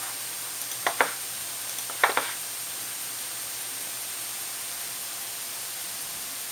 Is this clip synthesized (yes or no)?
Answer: no